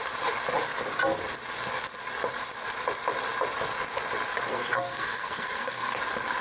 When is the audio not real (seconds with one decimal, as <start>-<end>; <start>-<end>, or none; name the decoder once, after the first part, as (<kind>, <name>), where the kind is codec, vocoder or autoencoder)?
4.5-6.0 (codec, SNAC)